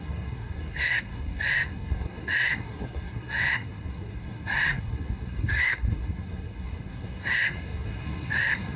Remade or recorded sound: remade